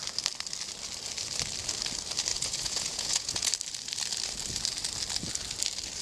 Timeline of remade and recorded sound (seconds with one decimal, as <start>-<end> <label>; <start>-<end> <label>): 0.0-2.3 recorded; 2.3-3.5 remade; 3.5-6.0 recorded